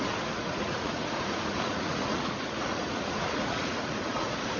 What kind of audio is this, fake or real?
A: fake